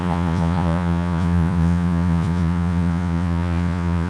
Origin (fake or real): fake